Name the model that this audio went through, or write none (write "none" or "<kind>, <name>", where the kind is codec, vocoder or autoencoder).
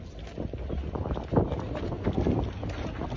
none